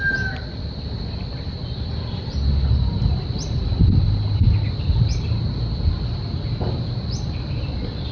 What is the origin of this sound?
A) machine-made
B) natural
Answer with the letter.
B